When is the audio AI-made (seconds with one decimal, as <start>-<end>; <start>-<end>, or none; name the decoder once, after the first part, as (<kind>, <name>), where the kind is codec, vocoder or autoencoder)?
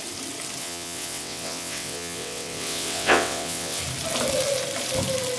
0.6-3.8 (vocoder, WaveNeXt)